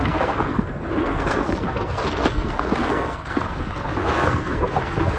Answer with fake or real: fake